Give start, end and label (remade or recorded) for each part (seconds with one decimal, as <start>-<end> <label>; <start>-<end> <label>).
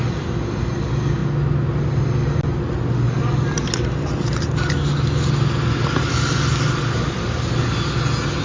0.0-8.4 recorded